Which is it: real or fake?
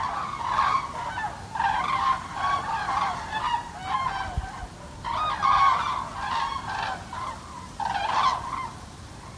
real